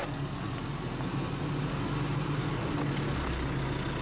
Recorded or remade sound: recorded